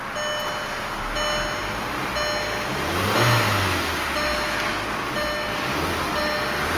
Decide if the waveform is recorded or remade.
recorded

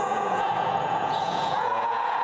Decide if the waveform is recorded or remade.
remade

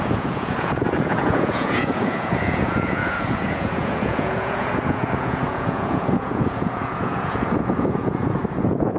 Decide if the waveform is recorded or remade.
remade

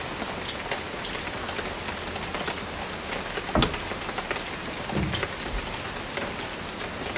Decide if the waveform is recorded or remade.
recorded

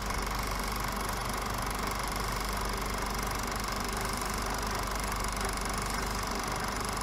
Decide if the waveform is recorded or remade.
recorded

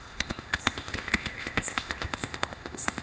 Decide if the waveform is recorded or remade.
remade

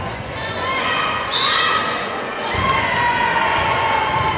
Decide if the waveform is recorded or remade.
remade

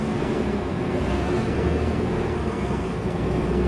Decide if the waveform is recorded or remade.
remade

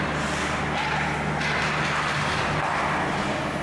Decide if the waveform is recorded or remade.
recorded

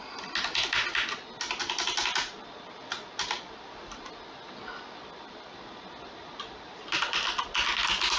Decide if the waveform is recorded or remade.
recorded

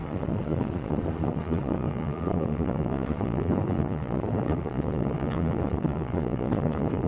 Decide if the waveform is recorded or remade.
remade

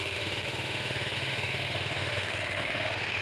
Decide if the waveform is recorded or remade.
remade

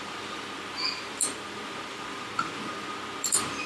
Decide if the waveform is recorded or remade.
remade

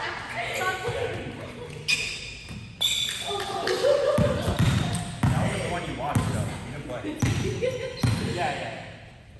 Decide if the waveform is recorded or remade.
recorded